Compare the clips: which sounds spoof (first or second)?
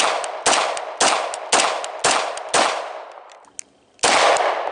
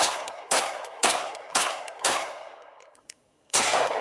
second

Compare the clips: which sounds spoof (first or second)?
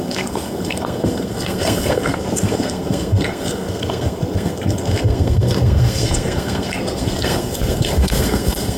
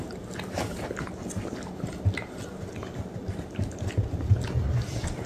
first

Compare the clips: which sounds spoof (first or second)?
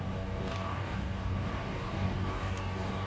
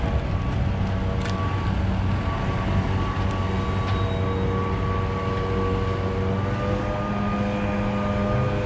first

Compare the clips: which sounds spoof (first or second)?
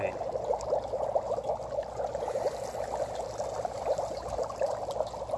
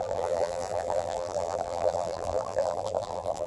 second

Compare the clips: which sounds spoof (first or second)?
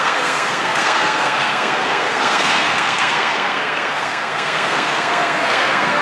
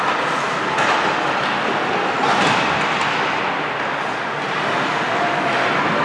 first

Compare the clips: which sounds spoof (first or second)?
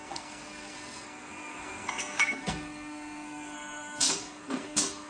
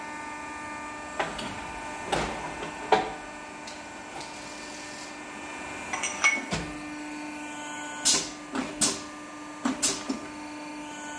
first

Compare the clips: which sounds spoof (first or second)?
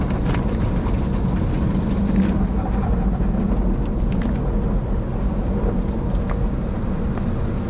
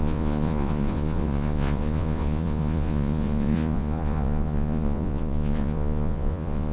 second